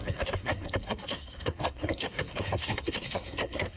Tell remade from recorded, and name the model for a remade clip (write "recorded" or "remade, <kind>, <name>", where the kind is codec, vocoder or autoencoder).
remade, codec, SNAC